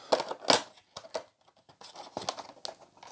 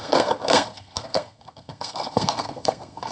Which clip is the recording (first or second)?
first